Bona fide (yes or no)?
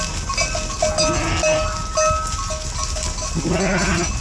yes